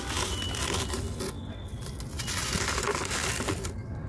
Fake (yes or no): no